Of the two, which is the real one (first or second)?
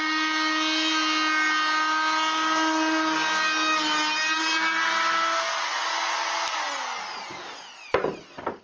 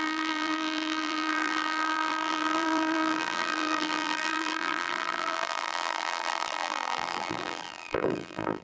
first